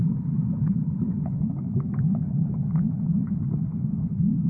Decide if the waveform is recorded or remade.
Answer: remade